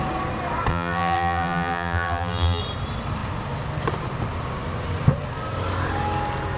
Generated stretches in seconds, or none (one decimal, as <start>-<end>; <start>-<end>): 0.7-2.6